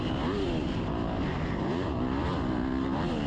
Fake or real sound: fake